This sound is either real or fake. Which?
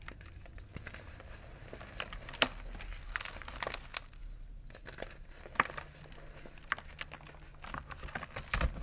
real